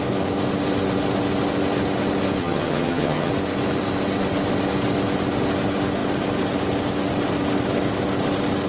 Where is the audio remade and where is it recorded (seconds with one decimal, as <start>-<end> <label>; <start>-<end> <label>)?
0.0-2.4 recorded; 2.4-3.3 remade; 3.3-8.7 recorded